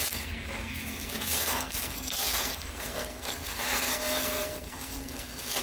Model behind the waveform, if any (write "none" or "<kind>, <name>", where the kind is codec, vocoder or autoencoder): codec, SNAC